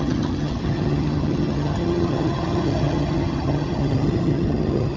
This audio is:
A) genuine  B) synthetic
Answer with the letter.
B